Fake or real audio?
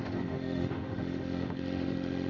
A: fake